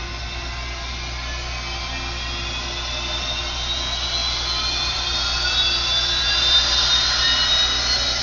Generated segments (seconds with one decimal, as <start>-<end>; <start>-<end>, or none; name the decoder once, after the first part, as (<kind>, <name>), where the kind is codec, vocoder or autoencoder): none